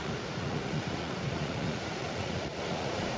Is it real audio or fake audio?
fake